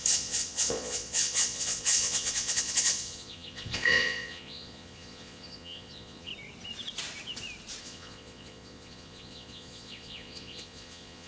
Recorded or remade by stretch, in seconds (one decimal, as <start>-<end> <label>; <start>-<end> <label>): 0.0-6.3 remade; 6.3-7.8 recorded; 7.8-11.3 remade